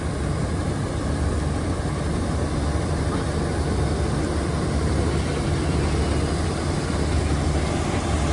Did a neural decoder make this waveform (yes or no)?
no